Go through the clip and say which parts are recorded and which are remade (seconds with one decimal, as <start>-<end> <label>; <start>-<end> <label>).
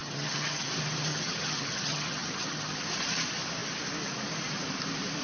0.0-0.7 remade; 0.7-1.1 recorded; 1.1-2.8 remade; 2.8-5.2 recorded